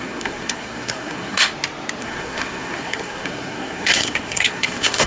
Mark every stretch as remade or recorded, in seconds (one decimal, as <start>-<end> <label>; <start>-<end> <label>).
0.0-1.4 remade; 1.4-2.0 recorded; 2.0-5.1 remade